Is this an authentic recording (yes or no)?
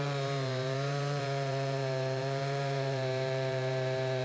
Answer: no